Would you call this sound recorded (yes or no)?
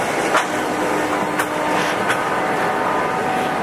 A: yes